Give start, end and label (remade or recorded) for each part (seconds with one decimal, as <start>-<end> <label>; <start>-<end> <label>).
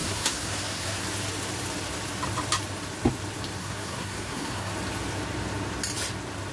0.0-1.0 remade; 1.0-3.6 recorded; 3.6-4.7 remade; 4.7-6.5 recorded